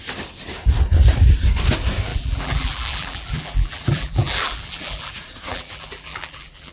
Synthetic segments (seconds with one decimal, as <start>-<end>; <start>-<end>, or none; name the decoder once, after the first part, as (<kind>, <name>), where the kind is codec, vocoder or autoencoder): 2.1-5.1 (vocoder, BigVGAN v2); 5.5-6.7